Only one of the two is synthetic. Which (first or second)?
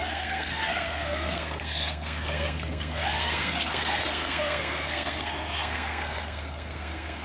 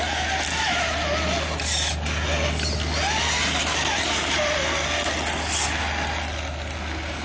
first